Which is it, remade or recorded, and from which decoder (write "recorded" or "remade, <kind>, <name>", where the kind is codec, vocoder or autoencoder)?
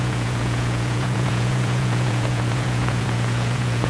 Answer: remade, vocoder, Vocos